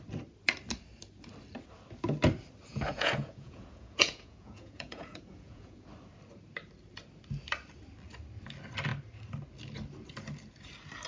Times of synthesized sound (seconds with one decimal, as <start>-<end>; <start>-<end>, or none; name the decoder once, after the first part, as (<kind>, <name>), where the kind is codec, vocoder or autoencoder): 2.7-5.9 (vocoder, Vocos)